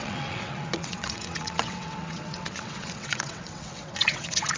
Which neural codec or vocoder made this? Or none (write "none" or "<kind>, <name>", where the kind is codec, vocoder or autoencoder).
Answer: vocoder, WaveNeXt